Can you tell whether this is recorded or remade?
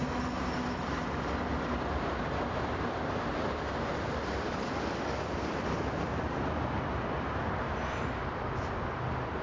recorded